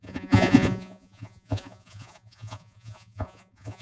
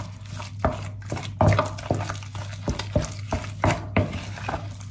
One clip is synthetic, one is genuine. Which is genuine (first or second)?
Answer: second